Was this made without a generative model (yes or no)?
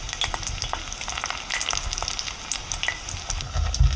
yes